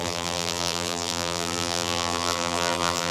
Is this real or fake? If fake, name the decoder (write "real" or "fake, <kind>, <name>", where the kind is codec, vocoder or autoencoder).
fake, vocoder, BigVGAN v2